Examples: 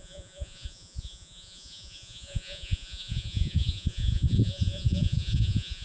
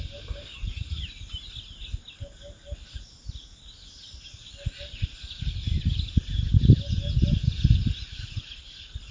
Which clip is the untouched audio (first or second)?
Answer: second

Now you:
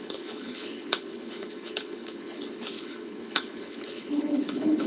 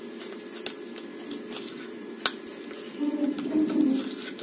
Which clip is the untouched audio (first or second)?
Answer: second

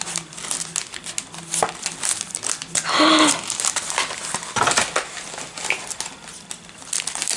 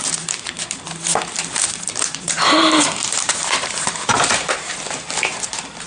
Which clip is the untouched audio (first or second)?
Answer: first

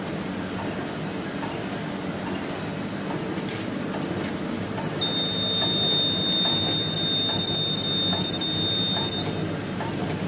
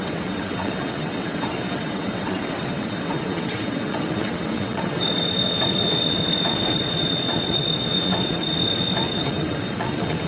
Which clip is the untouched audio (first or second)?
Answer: first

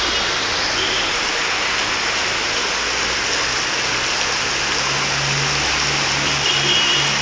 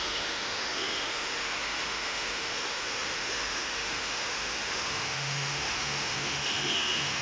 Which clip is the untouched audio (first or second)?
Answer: first